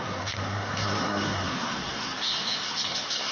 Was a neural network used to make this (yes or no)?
yes